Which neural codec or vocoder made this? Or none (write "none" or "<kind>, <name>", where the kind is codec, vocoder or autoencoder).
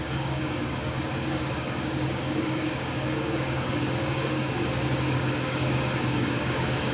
codec, DAC